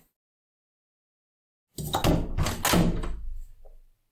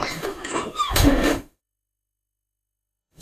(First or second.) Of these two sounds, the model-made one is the second